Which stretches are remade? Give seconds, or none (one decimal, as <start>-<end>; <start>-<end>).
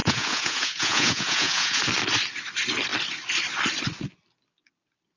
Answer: 0.0-1.8